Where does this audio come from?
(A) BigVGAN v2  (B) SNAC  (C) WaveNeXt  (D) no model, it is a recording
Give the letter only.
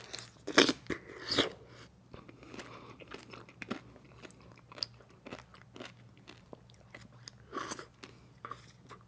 D